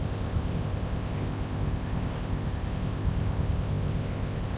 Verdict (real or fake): fake